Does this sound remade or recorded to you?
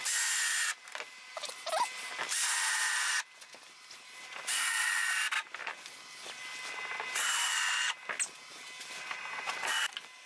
recorded